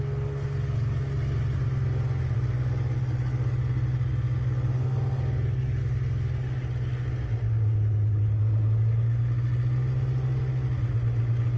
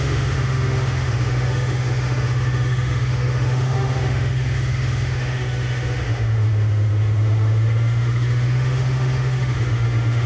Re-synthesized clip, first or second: second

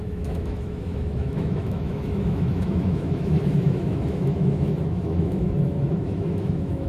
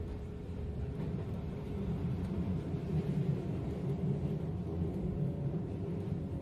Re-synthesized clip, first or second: first